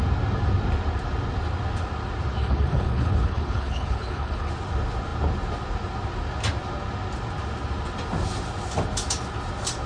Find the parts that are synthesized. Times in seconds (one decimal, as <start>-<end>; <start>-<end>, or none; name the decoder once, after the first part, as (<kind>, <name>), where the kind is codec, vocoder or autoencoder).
2.4-4.5 (codec, HILCodec)